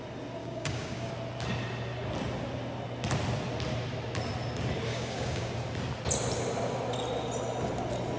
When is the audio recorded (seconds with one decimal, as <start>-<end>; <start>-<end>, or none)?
0.0-0.4; 1.1-4.9; 5.5-8.2